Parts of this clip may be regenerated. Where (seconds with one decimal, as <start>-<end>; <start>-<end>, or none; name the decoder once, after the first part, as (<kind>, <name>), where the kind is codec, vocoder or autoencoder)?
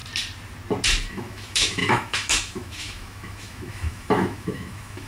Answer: 1.1-5.1 (autoencoder, DAC-VAE)